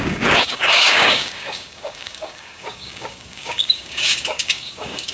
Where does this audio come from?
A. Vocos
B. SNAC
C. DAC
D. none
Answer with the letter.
C